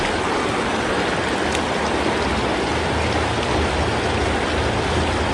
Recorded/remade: recorded